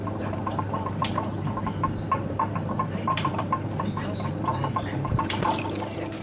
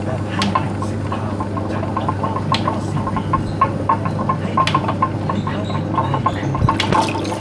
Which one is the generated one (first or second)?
first